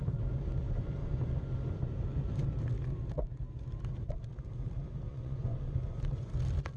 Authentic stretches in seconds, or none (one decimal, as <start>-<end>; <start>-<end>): 0.0-5.1; 6.3-6.8